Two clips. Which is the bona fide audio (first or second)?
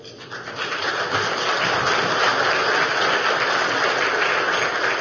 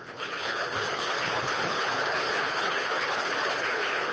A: first